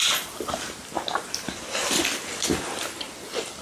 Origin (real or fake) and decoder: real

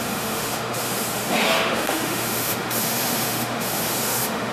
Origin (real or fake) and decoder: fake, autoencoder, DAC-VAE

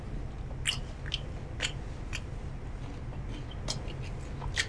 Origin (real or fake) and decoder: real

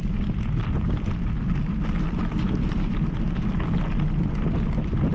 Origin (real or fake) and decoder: real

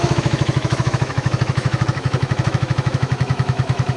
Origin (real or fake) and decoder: fake, autoencoder, DAC-VAE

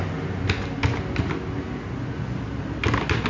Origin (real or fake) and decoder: real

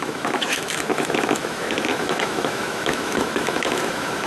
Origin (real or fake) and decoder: fake, autoencoder, DAC-VAE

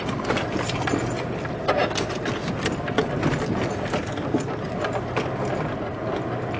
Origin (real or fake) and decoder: real